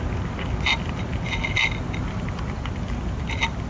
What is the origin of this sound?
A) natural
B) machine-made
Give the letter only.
A